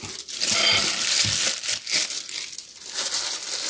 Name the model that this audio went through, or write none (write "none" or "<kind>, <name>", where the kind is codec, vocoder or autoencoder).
none